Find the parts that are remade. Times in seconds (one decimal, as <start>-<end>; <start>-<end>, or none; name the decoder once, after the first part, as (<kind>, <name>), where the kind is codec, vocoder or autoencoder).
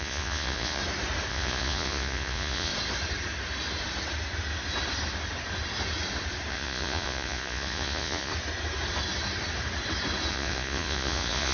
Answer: 0.0-0.8 (vocoder, Vocos); 1.3-2.7; 6.5-8.3; 10.3-11.5